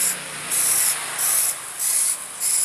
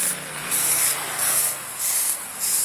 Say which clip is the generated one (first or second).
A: second